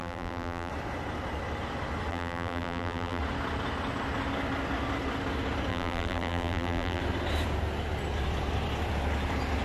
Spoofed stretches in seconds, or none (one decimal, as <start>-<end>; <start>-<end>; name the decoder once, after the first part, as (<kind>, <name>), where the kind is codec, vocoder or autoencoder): 0.0-0.7 (vocoder, BigVGAN v2); 2.1-3.2; 5.7-7.0